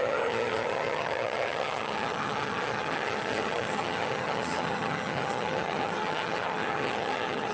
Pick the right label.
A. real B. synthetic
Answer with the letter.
B